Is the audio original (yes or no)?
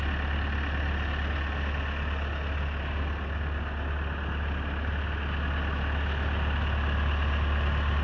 yes